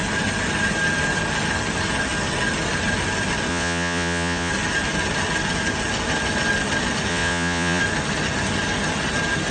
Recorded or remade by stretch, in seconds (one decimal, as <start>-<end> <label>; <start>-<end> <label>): 0.0-3.5 recorded; 3.5-4.5 remade; 4.5-7.1 recorded; 7.1-7.8 remade; 7.8-9.5 recorded